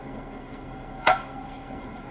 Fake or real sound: fake